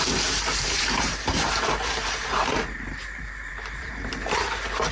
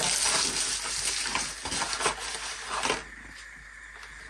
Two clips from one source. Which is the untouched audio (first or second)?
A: second